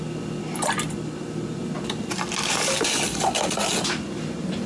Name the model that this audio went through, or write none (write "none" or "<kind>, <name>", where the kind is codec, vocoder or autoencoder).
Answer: none